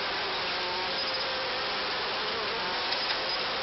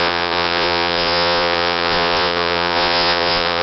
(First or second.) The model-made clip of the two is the second